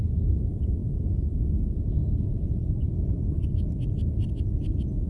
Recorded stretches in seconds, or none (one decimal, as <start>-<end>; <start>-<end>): 2.0-5.1